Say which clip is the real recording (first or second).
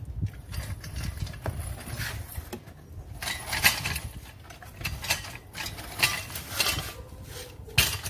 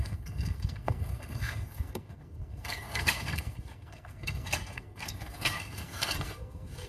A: first